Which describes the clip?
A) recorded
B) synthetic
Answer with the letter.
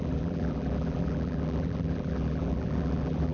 B